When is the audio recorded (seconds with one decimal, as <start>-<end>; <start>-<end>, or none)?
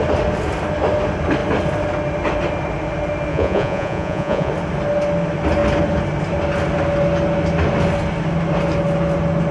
0.0-3.3; 4.5-9.5